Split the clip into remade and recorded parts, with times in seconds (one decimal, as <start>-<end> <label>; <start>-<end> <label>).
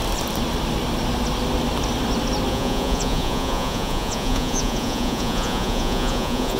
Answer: 0.0-2.5 recorded; 2.5-6.6 remade